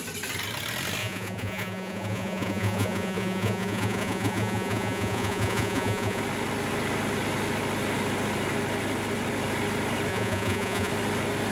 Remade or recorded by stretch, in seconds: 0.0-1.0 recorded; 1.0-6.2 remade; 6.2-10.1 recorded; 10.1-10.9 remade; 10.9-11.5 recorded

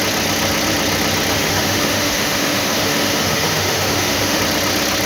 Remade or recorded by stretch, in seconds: 0.0-1.3 recorded; 1.3-4.4 remade; 4.4-5.1 recorded